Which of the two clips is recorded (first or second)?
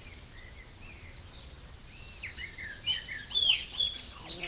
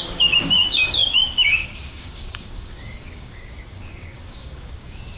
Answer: first